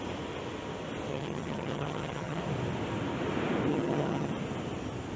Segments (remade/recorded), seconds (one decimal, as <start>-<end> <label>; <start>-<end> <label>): 0.0-1.1 recorded; 1.1-2.4 remade; 2.4-3.7 recorded; 3.7-4.3 remade; 4.3-5.2 recorded